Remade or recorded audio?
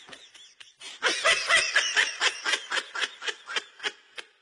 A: recorded